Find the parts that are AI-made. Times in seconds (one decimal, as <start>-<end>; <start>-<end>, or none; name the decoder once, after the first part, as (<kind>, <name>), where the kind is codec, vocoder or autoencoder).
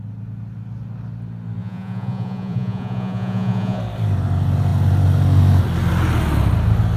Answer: 1.6-3.8 (vocoder, Vocos)